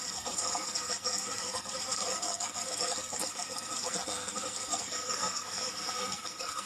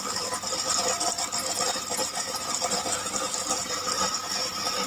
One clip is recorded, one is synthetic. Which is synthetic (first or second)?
first